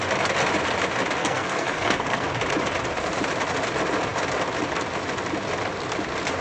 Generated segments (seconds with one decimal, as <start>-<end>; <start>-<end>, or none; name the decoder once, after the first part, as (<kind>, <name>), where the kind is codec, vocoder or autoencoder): 1.2-2.3 (codec, SNAC)